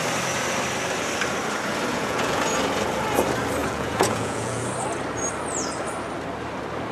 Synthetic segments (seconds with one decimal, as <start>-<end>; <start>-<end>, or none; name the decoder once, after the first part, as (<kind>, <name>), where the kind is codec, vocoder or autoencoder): 1.9-2.4 (vocoder, Vocos); 3.6-4.6